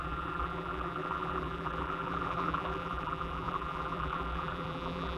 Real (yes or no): no